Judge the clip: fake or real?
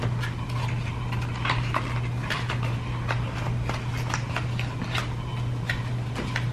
real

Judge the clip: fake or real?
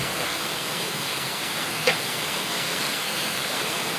fake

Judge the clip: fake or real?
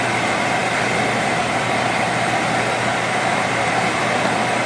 real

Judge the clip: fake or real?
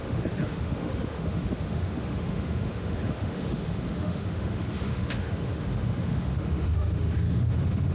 fake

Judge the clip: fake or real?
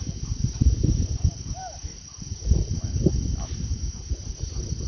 real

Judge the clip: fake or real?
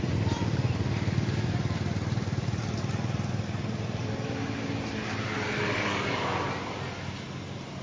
real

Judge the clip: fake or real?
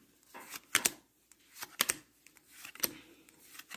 real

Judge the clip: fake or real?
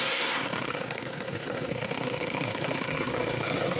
fake